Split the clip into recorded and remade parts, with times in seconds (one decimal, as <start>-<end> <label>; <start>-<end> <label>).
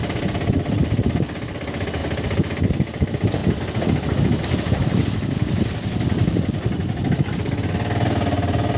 0.0-8.8 recorded